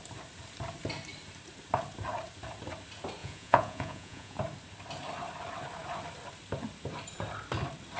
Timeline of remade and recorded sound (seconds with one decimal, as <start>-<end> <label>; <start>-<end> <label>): 0.0-3.2 recorded; 3.2-4.4 remade; 4.4-8.0 recorded

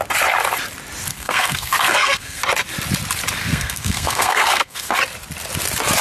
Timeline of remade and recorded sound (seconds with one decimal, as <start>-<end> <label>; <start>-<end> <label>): 0.0-1.1 recorded; 1.1-2.4 remade; 2.4-3.4 recorded; 3.4-4.9 remade; 4.9-6.0 recorded

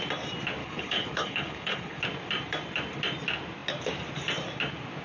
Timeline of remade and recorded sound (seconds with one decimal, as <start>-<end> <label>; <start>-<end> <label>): 0.0-0.6 recorded; 0.6-2.0 remade; 2.0-5.0 recorded

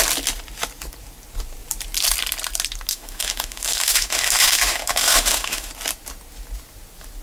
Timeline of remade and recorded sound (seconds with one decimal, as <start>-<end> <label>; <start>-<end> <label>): 0.0-2.9 recorded; 2.9-5.7 remade; 5.7-7.2 recorded

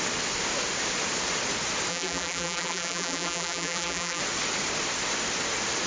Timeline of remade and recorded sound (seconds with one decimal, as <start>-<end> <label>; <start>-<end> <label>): 0.0-1.9 recorded; 1.9-4.2 remade; 4.2-5.9 recorded

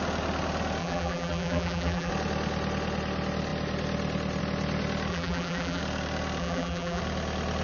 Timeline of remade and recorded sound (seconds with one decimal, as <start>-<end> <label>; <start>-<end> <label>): 0.0-0.8 recorded; 0.8-2.1 remade; 2.1-5.1 recorded; 5.1-5.8 remade; 5.8-6.4 recorded; 6.4-7.0 remade; 7.0-7.6 recorded

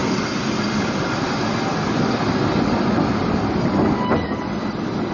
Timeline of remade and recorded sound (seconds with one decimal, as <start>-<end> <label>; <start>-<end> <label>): 0.0-5.1 recorded